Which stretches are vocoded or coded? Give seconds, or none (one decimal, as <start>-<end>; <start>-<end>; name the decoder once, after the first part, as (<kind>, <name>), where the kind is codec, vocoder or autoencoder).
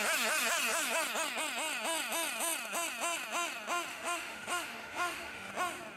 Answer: 3.9-5.5 (autoencoder, DAC-VAE)